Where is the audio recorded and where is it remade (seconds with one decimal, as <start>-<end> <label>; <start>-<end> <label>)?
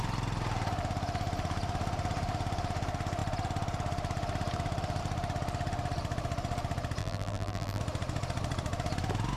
0.0-7.0 recorded; 7.0-7.8 remade; 7.8-9.4 recorded